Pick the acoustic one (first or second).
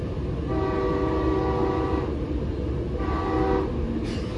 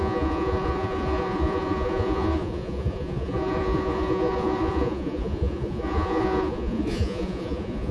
first